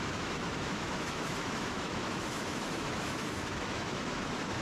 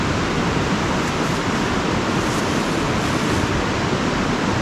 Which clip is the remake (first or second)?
first